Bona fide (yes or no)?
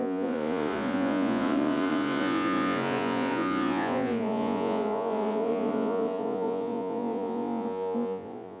no